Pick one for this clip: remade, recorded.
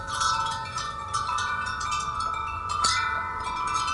remade